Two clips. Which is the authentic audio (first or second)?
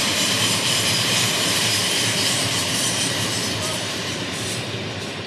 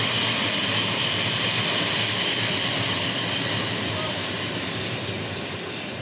second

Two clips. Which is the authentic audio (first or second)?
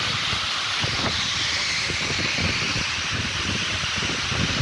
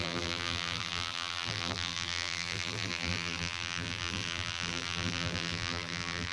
first